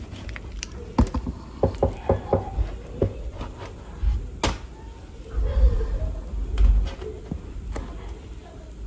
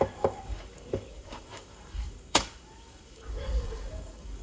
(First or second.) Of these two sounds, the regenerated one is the second